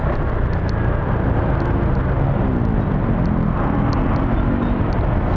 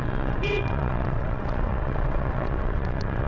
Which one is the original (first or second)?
first